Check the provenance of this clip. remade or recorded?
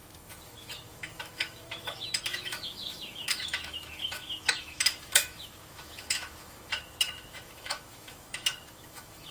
remade